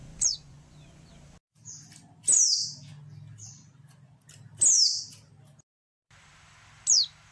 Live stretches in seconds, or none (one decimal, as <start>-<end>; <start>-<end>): 1.1-7.3